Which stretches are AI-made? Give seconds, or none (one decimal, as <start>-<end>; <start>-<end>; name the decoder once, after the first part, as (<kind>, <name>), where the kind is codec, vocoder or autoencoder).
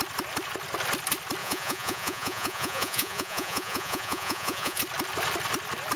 1.4-4.8 (vocoder, Vocos)